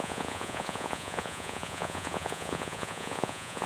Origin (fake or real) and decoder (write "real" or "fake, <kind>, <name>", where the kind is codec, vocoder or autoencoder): fake, vocoder, Vocos